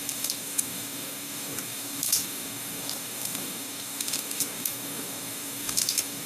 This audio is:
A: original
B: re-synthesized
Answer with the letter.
B